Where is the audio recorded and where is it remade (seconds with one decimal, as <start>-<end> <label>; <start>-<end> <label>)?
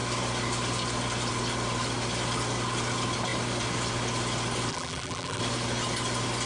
0.0-4.7 recorded; 4.7-5.4 remade; 5.4-6.5 recorded